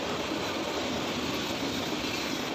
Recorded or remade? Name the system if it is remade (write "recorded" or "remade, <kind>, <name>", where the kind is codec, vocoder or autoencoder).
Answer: recorded